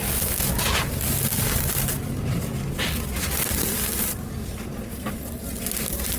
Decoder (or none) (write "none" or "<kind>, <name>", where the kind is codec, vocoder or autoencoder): none